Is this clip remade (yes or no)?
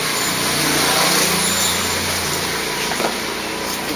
no